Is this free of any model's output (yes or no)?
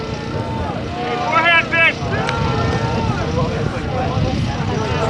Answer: yes